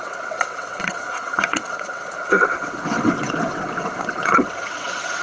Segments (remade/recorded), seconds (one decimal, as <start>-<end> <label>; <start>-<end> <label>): 0.0-5.2 remade